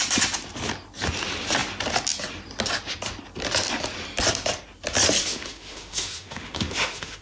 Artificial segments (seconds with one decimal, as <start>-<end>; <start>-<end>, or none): 5.2-7.2